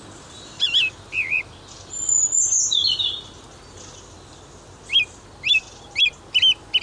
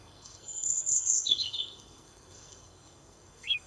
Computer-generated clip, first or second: second